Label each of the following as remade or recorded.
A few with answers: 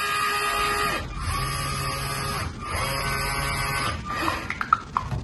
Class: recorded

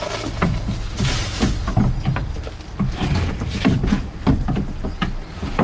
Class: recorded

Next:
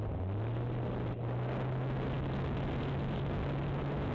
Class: recorded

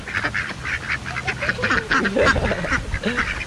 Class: recorded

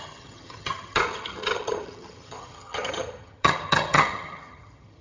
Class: remade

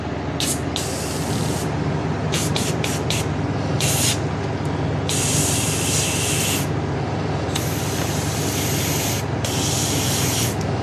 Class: recorded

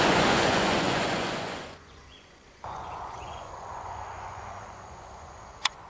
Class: remade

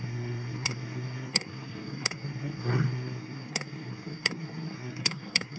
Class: remade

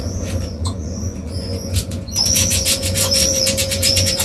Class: remade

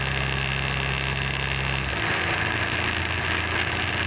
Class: recorded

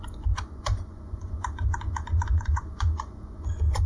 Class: remade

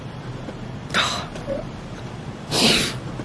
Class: recorded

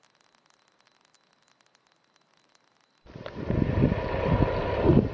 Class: recorded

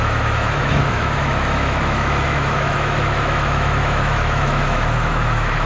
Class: remade